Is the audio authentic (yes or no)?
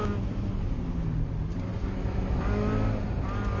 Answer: yes